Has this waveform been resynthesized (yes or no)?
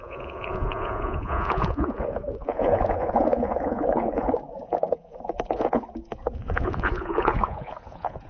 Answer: yes